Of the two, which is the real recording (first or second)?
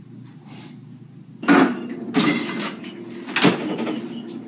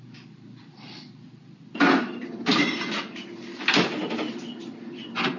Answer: first